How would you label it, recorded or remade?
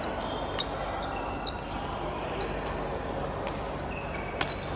recorded